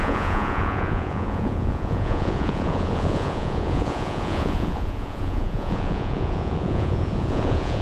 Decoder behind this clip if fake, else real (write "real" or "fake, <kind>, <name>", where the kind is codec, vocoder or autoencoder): fake, vocoder, Vocos